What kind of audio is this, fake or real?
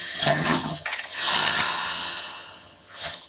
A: fake